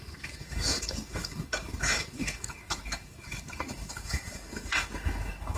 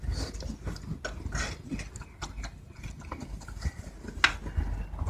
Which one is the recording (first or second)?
second